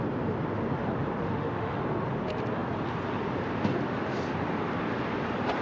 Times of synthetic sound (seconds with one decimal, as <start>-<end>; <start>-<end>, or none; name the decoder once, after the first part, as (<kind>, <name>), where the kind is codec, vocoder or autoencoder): 1.2-1.8 (autoencoder, DAC-VAE)